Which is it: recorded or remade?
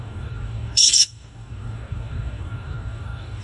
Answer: remade